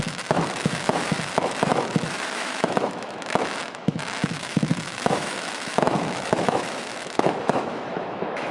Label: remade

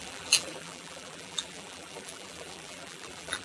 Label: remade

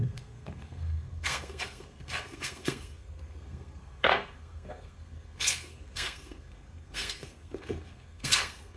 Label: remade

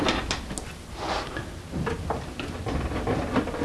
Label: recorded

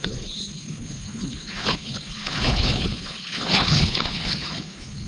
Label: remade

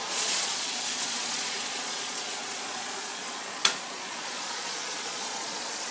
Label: remade